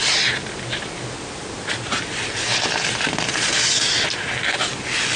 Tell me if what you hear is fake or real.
real